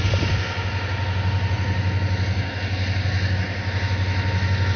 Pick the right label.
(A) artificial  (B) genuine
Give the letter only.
B